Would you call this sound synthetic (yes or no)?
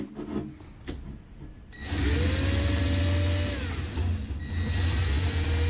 no